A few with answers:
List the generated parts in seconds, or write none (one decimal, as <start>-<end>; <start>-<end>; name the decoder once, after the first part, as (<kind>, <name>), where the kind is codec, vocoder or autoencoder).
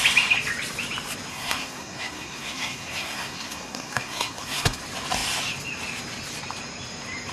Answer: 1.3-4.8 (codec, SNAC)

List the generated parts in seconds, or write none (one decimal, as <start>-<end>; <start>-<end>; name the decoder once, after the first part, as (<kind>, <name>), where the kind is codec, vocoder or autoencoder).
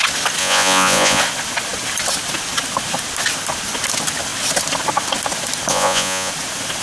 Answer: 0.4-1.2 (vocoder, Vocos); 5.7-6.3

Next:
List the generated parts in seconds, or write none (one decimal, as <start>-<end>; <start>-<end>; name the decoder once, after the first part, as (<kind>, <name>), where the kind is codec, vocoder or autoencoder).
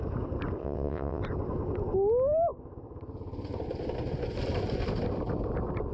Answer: 0.6-1.2 (vocoder, WaveNeXt)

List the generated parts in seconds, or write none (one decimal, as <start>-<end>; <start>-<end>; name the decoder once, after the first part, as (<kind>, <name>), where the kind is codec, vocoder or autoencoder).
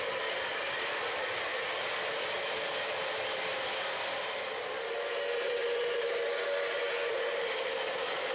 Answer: none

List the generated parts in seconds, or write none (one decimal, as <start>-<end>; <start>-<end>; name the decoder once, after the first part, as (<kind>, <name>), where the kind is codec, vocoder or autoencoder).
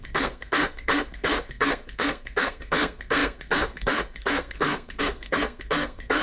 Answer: 0.0-6.2 (codec, SNAC)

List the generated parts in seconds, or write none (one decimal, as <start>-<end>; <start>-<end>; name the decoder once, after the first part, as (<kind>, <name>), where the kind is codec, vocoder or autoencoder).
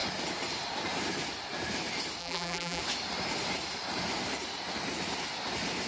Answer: 2.2-2.8 (vocoder, BigVGAN v2)